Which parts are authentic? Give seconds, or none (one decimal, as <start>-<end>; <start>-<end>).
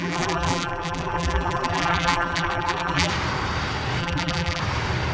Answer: 3.1-4.0; 4.6-5.1